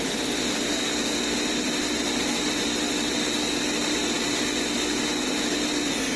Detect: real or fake real